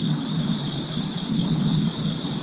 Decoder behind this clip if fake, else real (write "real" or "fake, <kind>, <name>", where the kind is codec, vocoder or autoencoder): real